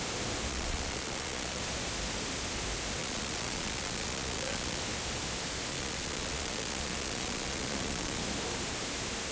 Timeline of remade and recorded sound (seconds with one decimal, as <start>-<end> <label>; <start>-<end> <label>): 0.0-0.5 recorded; 0.5-1.6 remade; 1.6-3.0 recorded; 3.0-4.8 remade; 4.8-5.7 recorded; 5.7-8.2 remade; 8.2-9.3 recorded